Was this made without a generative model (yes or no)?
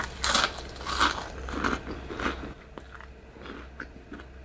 yes